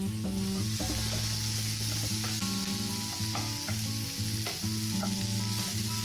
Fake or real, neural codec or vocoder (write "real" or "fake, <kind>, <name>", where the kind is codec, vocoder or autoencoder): real